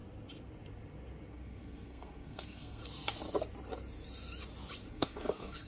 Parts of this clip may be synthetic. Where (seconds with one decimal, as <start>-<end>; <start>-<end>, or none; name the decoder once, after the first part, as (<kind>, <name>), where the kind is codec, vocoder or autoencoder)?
1.3-2.8 (codec, SNAC); 4.9-5.7